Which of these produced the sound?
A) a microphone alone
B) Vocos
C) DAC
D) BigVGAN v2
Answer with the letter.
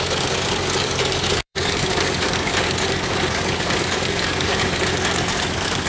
C